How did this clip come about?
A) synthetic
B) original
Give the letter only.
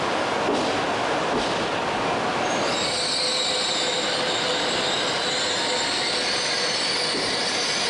B